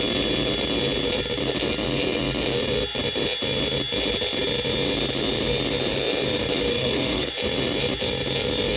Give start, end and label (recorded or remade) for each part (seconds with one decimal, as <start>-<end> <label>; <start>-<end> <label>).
0.0-6.7 recorded; 6.7-7.3 remade; 7.3-8.8 recorded